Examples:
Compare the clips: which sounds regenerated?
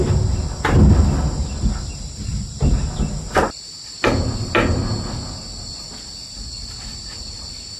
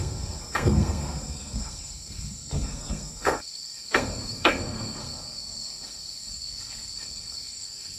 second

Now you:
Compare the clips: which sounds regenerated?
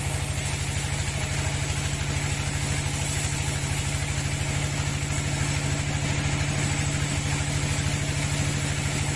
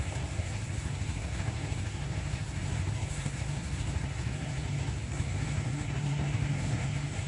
second